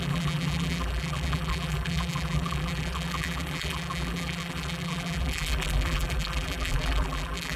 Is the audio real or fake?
fake